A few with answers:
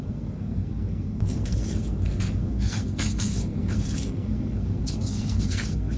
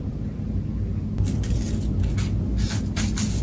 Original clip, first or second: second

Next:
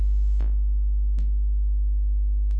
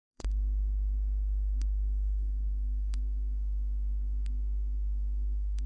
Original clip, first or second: first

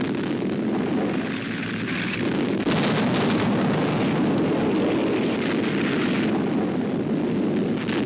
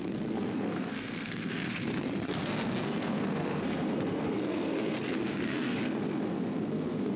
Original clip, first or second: first